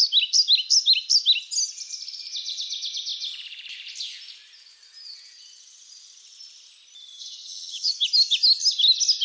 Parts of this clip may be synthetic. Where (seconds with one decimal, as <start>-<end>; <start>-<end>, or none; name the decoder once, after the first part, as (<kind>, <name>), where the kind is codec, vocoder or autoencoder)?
7.2-7.9 (vocoder, WaveNeXt)